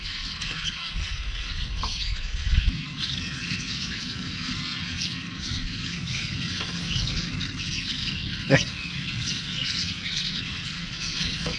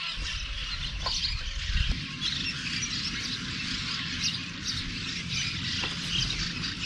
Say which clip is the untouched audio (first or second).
second